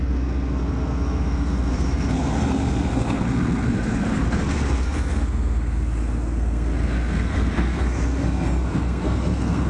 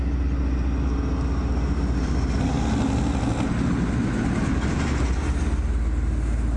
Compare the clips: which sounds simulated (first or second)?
first